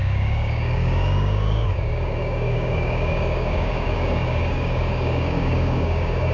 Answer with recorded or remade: remade